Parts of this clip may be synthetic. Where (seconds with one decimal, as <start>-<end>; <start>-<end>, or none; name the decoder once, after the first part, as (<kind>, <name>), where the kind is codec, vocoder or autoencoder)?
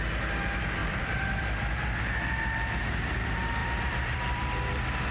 0.8-1.5 (vocoder, BigVGAN v2); 3.6-4.4